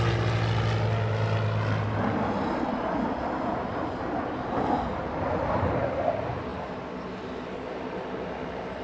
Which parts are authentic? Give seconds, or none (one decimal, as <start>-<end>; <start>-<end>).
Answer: 0.0-8.8